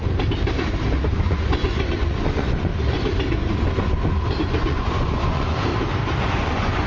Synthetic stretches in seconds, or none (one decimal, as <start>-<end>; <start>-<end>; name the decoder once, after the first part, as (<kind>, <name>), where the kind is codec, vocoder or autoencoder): 1.2-2.7 (vocoder, Vocos); 4.4-5.7; 6.2-6.9